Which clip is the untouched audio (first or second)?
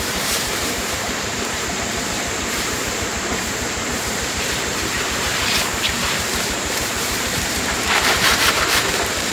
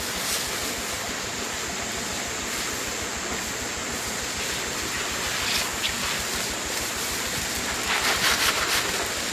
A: second